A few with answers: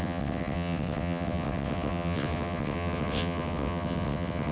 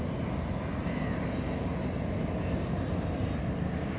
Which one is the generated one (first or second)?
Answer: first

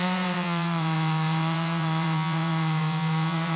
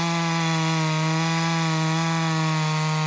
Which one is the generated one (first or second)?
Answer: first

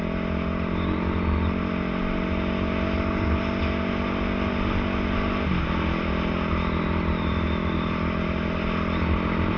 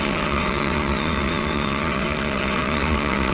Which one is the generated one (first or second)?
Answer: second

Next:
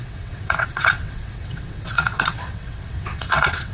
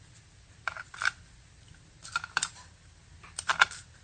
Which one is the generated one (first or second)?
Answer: first